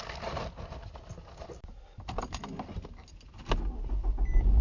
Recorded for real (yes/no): yes